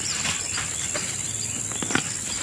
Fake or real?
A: real